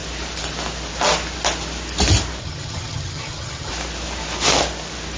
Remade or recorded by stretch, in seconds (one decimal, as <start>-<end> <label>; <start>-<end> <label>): 0.0-2.4 recorded; 2.4-3.7 remade; 3.7-5.2 recorded